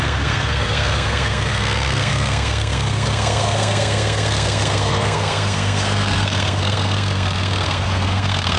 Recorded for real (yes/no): no